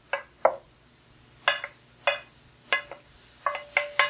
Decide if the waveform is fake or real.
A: real